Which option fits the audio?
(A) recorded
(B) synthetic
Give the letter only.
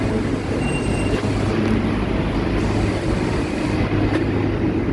A